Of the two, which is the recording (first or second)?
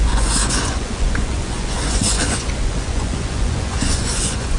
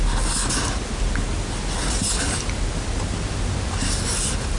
second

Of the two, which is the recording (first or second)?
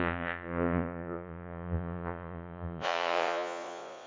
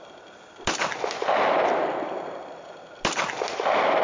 second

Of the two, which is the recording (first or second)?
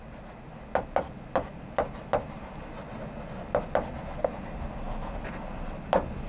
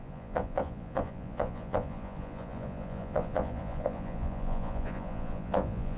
first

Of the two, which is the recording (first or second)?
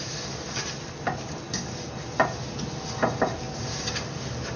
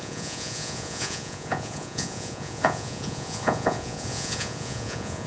first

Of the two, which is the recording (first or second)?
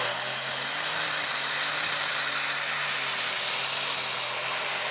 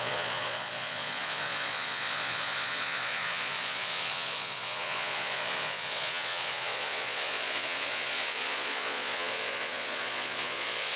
first